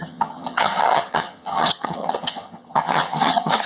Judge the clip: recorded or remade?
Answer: remade